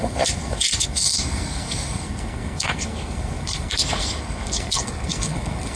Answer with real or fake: fake